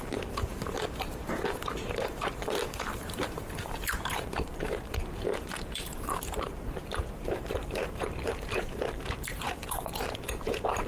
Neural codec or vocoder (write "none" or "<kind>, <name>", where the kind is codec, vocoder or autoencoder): vocoder, BigVGAN v2